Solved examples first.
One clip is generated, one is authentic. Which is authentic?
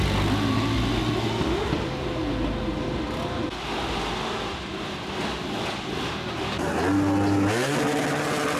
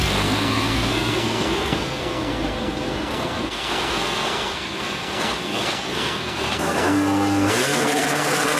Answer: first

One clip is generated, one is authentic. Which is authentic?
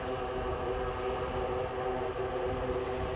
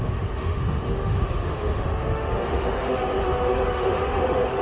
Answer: first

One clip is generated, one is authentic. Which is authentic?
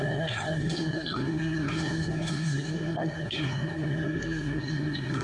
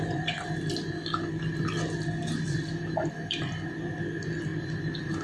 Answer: second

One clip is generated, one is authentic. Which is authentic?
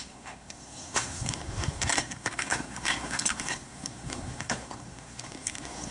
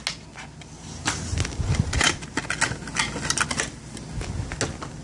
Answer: second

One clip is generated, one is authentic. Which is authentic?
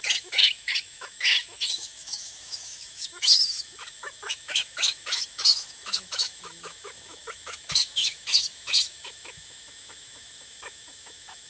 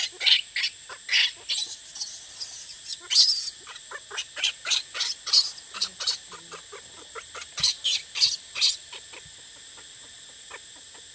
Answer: second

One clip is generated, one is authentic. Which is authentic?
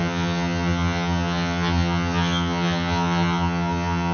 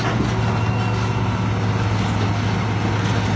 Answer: second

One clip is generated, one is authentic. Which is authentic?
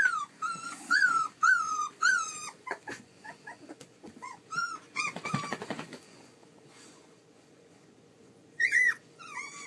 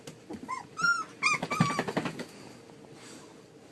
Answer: second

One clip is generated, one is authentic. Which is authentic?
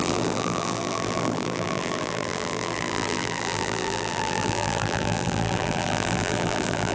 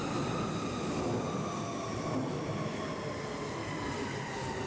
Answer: second